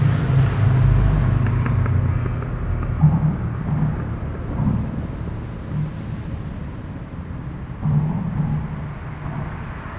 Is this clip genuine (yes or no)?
yes